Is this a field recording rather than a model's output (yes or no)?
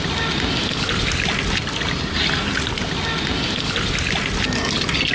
yes